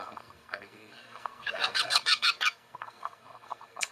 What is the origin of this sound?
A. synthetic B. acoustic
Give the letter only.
A